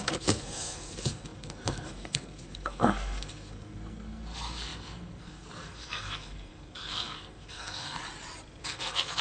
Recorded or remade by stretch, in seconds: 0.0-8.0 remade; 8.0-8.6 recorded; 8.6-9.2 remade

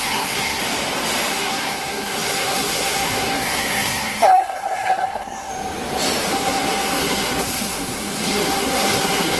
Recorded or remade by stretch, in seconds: 0.0-0.6 remade; 0.6-1.3 recorded; 1.3-5.5 remade; 5.5-6.3 recorded; 6.3-9.4 remade

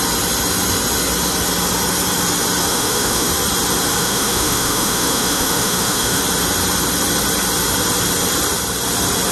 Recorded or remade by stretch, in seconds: 0.0-2.7 recorded; 2.7-3.3 remade; 3.3-4.0 recorded; 4.0-6.2 remade; 6.2-9.3 recorded

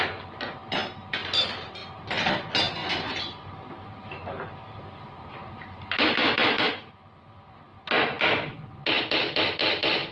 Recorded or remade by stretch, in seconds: 0.0-2.8 recorded; 2.8-6.6 remade; 6.6-10.1 recorded

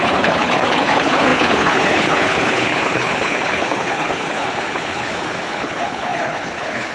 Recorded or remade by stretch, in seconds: 0.0-6.9 remade

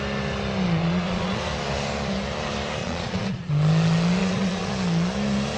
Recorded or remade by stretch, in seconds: 0.0-0.8 recorded; 0.8-1.4 remade; 1.4-2.8 recorded; 2.8-3.5 remade; 3.5-4.2 recorded; 4.2-4.7 remade; 4.7-5.6 recorded

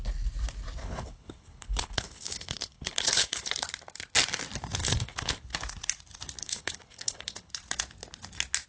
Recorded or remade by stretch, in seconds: 0.0-0.8 recorded; 0.8-3.5 remade; 3.5-4.8 recorded; 4.8-5.3 remade; 5.3-6.4 recorded; 6.4-7.5 remade; 7.5-8.7 recorded

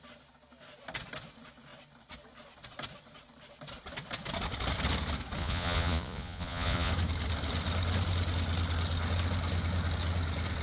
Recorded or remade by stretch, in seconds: 0.0-5.4 recorded; 5.4-6.9 remade; 6.9-10.6 recorded